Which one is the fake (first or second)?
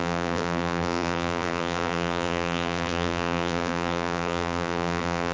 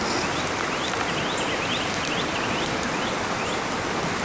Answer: first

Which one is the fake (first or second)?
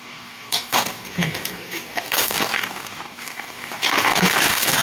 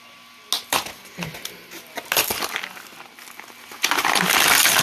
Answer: first